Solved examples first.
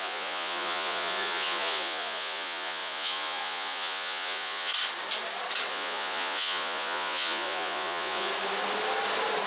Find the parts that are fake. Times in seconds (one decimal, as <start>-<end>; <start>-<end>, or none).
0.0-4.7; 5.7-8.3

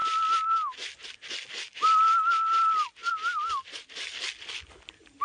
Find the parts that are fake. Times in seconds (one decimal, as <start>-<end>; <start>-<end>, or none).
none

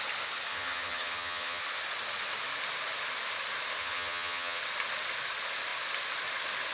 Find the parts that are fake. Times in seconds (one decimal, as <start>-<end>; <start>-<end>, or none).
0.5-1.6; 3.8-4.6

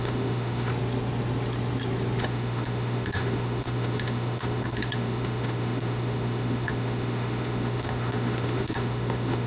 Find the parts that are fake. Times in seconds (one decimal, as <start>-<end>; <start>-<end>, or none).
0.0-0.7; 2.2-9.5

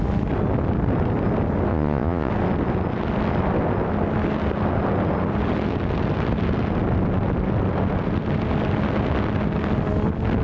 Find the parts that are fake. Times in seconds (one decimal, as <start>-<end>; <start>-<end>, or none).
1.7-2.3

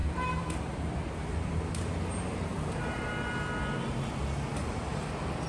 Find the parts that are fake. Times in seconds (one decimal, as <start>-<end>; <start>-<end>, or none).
0.0-1.6; 2.5-3.1; 4.6-5.1